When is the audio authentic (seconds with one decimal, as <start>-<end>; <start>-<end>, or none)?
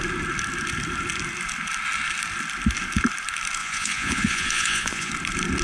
0.0-3.6; 5.1-5.6